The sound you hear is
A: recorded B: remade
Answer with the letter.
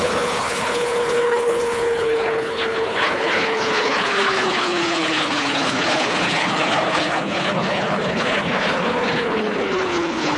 B